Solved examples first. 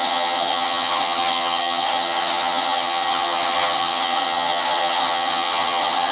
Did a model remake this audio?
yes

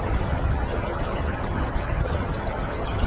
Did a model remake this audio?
yes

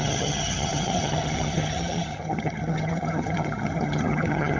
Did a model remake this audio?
yes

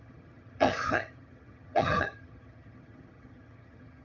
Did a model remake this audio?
yes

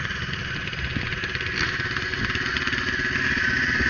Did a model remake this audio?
no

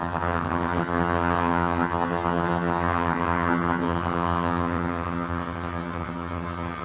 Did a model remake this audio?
yes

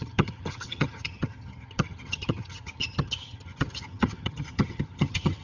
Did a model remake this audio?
yes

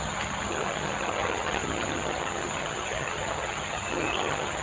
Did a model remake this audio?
yes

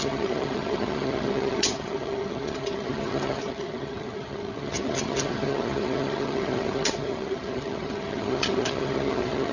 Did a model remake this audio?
yes